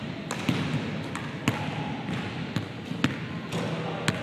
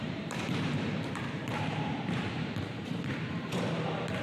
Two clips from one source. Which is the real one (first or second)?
first